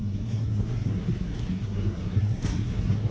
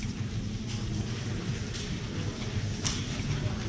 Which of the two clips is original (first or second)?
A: second